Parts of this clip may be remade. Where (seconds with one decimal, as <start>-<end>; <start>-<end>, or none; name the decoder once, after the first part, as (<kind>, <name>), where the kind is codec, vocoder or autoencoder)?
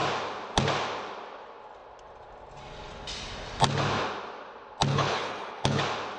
4.9-5.8 (codec, HILCodec)